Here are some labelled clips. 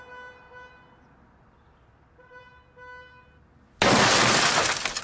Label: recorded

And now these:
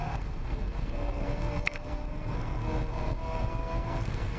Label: remade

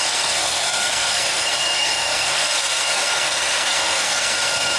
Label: remade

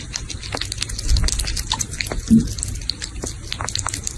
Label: recorded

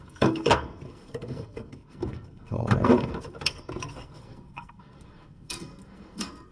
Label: remade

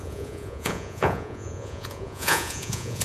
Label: remade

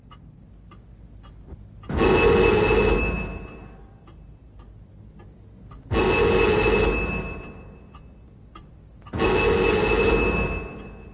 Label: recorded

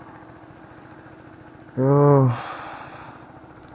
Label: recorded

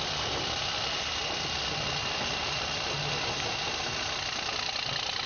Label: recorded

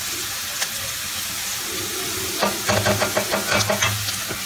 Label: recorded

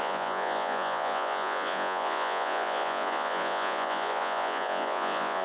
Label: remade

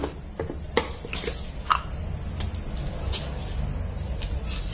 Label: recorded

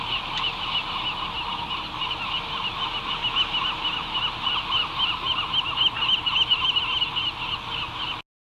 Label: recorded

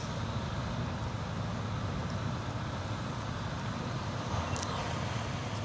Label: recorded